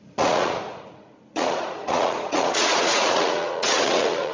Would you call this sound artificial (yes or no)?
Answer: yes